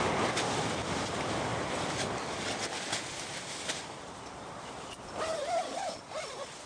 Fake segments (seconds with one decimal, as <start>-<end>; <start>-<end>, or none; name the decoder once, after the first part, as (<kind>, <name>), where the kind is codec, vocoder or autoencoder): 0.0-1.5 (vocoder, BigVGAN v2); 4.0-6.7